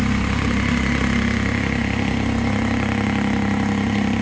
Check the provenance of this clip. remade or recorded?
recorded